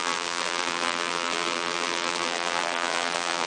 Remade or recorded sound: remade